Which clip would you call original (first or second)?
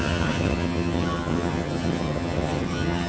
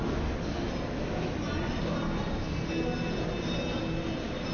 second